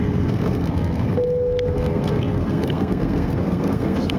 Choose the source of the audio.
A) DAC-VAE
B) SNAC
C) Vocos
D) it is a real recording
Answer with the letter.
B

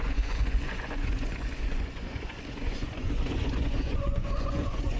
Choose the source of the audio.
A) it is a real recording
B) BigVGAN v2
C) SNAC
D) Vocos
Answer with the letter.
D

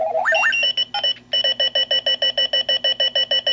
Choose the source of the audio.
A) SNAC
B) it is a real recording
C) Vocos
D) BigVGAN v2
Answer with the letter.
B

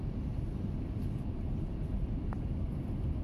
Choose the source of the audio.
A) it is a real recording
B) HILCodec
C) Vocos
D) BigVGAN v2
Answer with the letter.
D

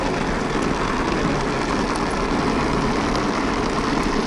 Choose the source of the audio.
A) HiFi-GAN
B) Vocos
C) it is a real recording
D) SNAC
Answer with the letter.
C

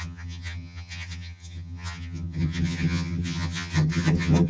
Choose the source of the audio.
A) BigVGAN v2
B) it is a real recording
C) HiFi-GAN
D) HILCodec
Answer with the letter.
C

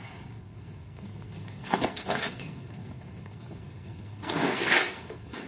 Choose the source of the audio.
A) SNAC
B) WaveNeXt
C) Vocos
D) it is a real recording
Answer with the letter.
A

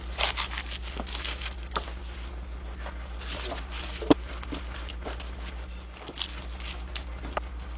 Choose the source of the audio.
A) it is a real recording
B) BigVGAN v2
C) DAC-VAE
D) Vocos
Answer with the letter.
A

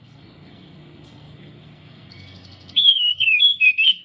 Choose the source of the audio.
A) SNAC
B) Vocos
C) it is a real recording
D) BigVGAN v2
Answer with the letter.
A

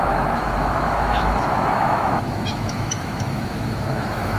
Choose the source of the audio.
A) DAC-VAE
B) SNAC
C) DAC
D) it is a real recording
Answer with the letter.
A